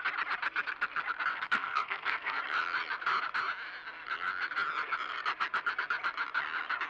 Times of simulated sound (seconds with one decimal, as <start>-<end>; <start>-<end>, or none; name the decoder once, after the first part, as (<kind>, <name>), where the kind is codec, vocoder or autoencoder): 1.3-2.4 (codec, SNAC)